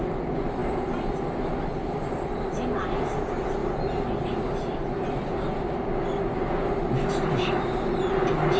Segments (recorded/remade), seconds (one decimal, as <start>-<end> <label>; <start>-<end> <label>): 0.0-8.6 recorded